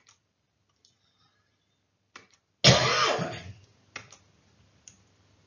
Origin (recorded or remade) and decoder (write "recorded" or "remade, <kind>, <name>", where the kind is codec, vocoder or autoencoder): recorded